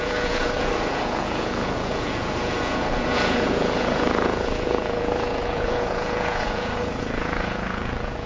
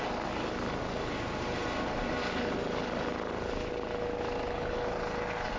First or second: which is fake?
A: first